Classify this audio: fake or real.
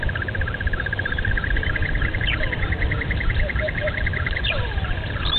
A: fake